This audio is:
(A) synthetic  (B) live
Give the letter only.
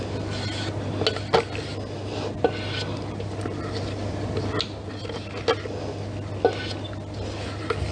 B